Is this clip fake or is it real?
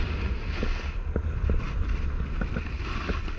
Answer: real